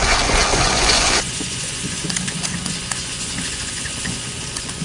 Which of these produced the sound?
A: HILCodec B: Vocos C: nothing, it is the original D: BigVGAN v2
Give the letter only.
B